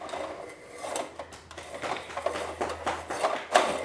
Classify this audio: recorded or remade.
recorded